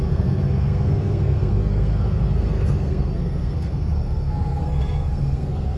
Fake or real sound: fake